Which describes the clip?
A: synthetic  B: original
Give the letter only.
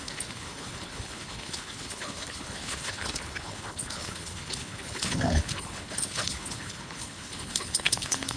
A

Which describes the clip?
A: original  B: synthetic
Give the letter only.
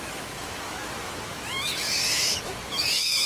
B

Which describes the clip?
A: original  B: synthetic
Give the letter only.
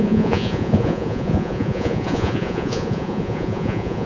B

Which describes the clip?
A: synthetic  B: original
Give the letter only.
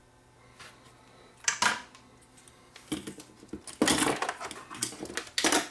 B